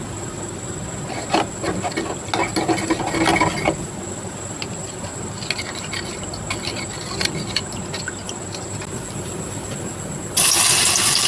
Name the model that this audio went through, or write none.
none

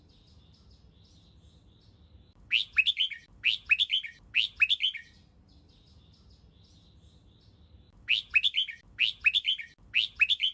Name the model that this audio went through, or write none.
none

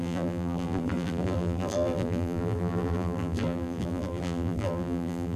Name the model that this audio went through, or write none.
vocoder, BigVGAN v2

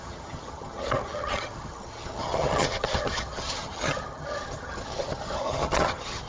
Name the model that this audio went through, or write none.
vocoder, HiFi-GAN